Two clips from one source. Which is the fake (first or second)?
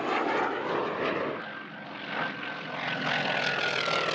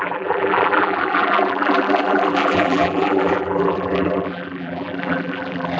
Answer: second